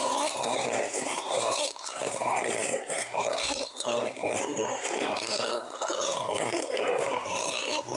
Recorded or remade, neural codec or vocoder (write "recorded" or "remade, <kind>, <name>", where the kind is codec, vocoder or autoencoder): remade, codec, SNAC